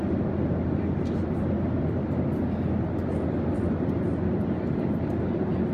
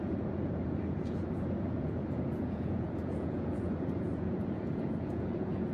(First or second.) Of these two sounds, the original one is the first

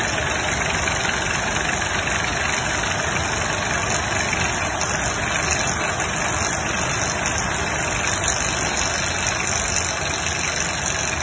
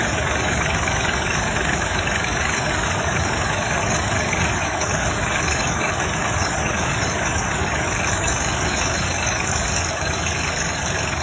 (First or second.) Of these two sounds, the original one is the first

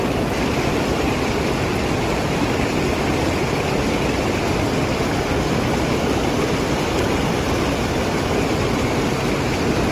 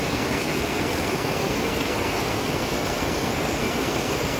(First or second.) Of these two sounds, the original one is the first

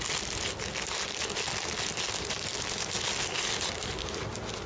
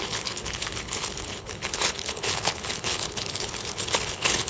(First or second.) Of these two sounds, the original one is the first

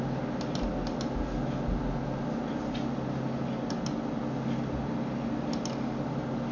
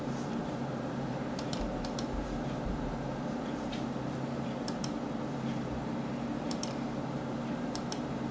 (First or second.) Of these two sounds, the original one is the first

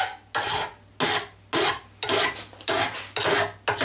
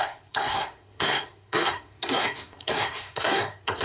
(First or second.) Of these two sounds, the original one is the first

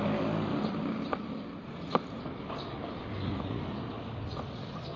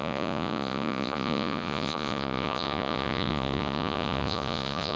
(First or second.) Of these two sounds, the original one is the first